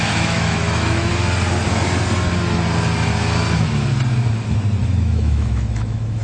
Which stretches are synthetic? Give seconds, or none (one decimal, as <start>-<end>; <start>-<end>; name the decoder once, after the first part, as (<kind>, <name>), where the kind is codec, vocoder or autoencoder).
0.0-1.1 (autoencoder, DAC-VAE); 4.8-6.2